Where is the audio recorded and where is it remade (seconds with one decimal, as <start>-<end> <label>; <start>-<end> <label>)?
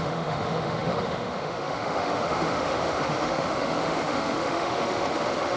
0.0-5.6 remade